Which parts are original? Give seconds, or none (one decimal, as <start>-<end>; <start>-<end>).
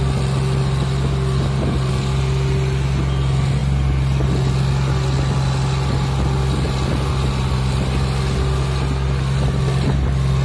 0.0-10.4